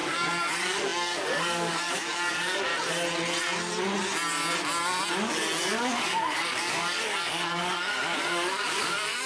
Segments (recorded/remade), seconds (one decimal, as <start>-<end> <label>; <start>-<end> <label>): 0.0-2.7 remade; 2.7-5.6 recorded; 5.6-9.3 remade